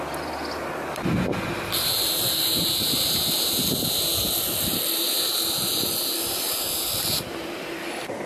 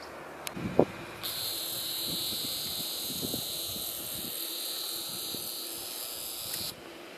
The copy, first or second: first